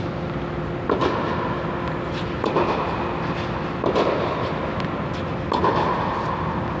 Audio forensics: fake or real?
real